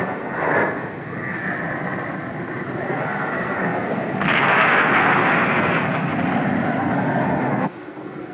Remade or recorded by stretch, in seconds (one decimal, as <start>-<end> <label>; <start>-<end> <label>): 0.0-1.4 remade; 1.4-2.9 recorded; 2.9-6.1 remade; 6.1-6.8 recorded; 6.8-8.3 remade